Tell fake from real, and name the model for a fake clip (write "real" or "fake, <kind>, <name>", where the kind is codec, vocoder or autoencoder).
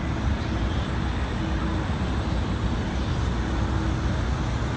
real